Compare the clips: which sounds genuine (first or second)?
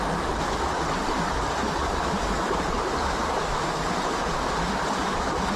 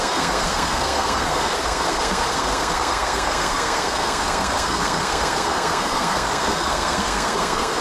first